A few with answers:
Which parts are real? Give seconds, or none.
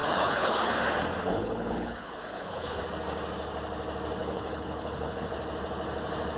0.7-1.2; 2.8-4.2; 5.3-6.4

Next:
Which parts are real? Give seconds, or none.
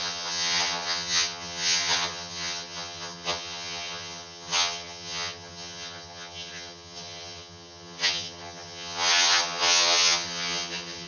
none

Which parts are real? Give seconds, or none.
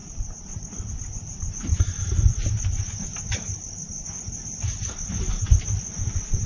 0.0-6.5